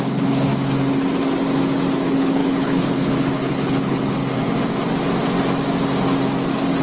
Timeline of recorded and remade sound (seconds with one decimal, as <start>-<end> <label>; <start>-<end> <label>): 0.0-0.5 remade; 0.5-2.0 recorded; 2.0-4.2 remade; 4.2-6.8 recorded